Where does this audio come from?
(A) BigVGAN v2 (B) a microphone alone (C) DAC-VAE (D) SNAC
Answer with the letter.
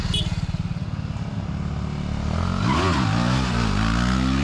B